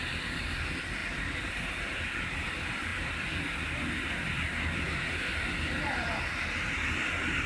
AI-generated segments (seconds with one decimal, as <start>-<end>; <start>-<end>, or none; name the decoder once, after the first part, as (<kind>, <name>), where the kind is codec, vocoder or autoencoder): 0.0-7.5 (vocoder, BigVGAN v2)